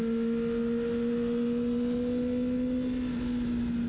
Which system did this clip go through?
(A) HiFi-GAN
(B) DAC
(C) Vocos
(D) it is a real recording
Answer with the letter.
D